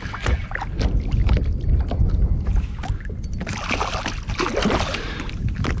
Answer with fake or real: real